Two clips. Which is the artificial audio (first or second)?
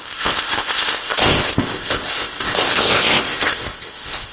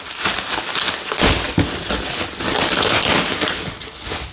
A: first